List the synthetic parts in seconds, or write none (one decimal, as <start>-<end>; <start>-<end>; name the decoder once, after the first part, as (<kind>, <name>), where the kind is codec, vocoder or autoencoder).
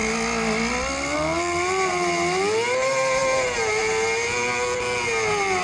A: none